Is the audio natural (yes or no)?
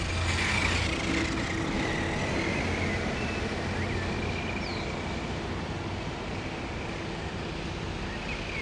yes